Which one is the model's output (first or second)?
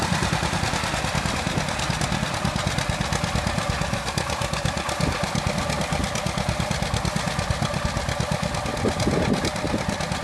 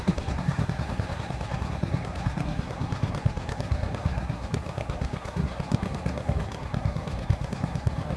second